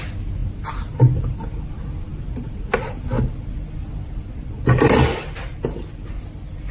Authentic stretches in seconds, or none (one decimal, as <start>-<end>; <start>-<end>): 0.4-1.2